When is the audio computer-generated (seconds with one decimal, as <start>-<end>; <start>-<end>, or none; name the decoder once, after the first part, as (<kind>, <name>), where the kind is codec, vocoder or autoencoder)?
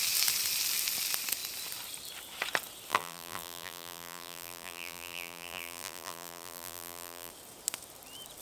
2.9-7.3 (vocoder, BigVGAN v2)